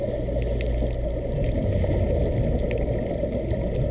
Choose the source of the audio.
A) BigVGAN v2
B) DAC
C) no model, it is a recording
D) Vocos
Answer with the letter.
C